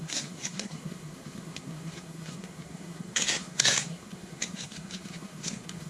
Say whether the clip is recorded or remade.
remade